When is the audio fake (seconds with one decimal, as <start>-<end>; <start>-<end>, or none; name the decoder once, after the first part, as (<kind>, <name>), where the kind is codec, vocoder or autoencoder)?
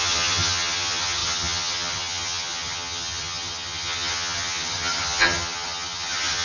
0.0-6.4 (vocoder, HiFi-GAN)